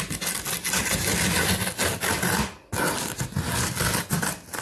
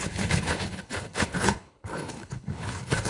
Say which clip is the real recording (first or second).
first